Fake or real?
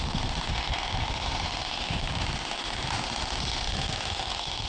fake